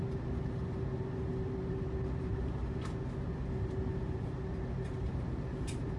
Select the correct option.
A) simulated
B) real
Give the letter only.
B